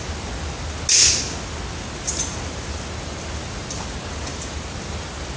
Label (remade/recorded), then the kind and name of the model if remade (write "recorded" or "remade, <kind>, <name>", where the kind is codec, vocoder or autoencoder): recorded